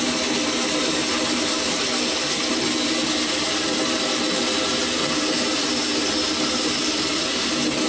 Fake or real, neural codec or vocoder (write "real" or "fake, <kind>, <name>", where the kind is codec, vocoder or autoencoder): real